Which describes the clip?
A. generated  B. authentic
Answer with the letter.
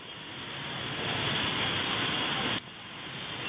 B